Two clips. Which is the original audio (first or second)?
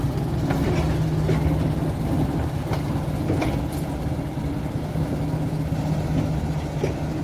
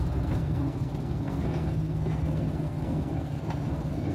first